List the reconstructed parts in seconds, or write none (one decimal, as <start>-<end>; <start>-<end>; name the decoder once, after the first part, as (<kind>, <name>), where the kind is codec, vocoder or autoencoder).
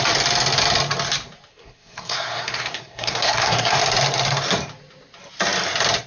1.5-3.8 (codec, SNAC)